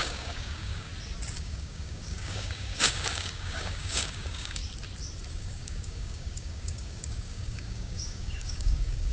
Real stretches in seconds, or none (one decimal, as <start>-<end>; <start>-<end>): 0.9-1.4; 4.6-5.3

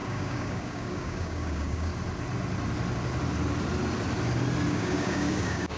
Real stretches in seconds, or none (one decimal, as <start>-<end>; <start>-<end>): 1.9-4.7

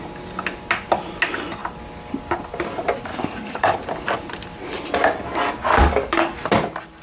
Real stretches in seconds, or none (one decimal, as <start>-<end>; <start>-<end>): 0.0-3.1; 3.8-5.8; 6.4-7.0